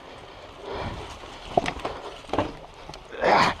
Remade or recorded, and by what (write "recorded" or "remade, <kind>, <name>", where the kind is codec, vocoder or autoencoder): recorded